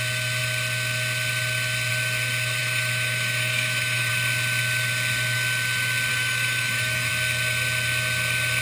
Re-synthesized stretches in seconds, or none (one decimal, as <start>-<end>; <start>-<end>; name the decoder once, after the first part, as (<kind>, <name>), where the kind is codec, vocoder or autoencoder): 2.6-4.1 (autoencoder, DAC-VAE); 6.1-7.1